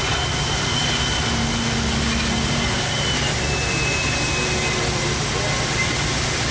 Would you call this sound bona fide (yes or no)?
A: yes